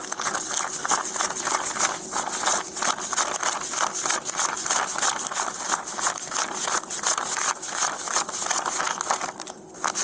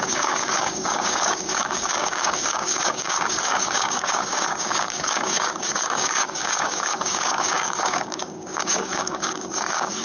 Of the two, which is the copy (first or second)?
second